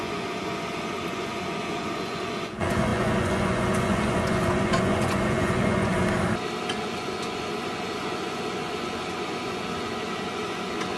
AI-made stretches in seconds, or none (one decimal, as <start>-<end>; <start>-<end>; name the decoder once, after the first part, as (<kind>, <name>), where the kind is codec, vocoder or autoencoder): 0.0-5.9 (vocoder, Vocos); 6.7-11.0